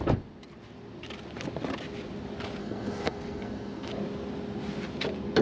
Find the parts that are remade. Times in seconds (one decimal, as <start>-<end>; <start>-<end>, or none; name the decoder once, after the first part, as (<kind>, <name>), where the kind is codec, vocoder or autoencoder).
2.6-3.9 (codec, SNAC)